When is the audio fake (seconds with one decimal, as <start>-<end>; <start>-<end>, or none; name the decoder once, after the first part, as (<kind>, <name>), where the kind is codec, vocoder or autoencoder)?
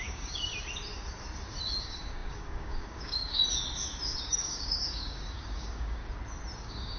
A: 0.0-0.5 (codec, DAC); 1.8-3.4; 4.2-6.0; 6.6-7.0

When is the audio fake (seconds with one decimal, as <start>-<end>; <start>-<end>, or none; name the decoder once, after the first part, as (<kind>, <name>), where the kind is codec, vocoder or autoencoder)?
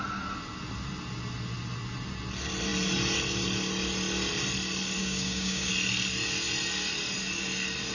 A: 5.0-5.7 (codec, DAC)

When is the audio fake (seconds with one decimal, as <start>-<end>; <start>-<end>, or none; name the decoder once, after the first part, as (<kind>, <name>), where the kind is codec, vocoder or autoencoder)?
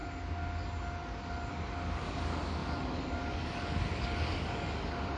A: 1.5-5.2 (codec, DAC)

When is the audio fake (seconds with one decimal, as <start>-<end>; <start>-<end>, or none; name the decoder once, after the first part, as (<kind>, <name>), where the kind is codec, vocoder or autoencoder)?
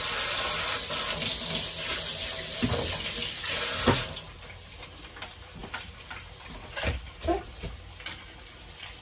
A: none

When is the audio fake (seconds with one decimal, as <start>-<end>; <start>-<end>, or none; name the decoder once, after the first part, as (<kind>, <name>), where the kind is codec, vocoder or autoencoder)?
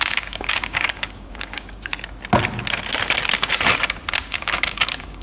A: 0.0-1.9 (codec, DAC); 4.2-5.2